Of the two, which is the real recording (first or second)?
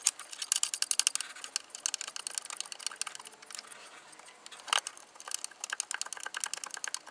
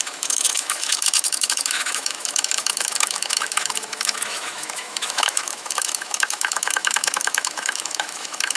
first